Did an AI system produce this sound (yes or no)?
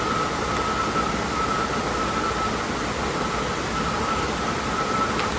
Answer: no